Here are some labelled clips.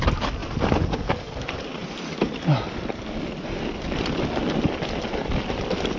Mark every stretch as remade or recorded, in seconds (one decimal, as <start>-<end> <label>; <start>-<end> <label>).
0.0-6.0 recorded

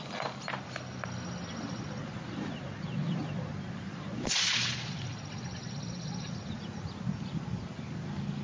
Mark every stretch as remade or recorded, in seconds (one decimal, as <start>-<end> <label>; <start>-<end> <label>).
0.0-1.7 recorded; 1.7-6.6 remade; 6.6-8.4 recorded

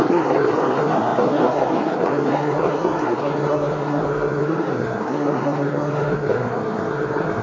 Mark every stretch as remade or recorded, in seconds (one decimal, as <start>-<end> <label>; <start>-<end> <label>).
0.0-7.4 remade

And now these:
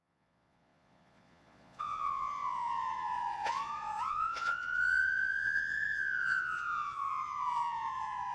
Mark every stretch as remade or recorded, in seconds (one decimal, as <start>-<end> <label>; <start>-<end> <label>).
0.0-8.3 remade